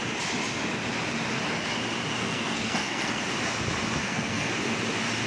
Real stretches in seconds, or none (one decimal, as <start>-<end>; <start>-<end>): 0.0-2.2; 3.2-4.0; 4.5-5.3